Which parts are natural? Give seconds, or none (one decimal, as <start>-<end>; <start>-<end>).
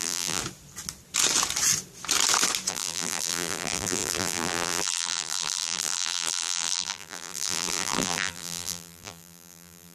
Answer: 0.4-2.7